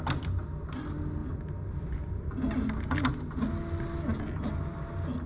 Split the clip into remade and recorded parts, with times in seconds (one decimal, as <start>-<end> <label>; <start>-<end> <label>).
0.0-5.3 recorded